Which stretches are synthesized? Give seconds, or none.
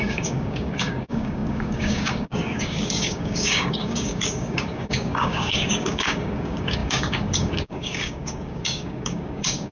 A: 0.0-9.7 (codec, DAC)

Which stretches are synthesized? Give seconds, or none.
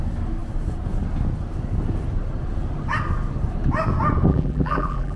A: 4.3-5.2 (vocoder, BigVGAN v2)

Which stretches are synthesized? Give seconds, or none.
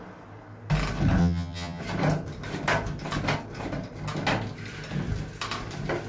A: 1.2-1.8 (vocoder, HiFi-GAN)